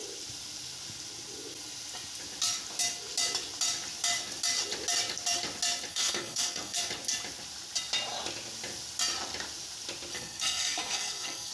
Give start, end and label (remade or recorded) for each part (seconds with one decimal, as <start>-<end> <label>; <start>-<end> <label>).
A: 0.0-5.9 recorded; 5.9-6.9 remade; 6.9-10.1 recorded; 10.1-11.5 remade